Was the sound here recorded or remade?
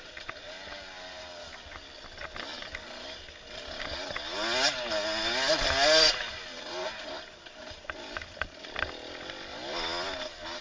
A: recorded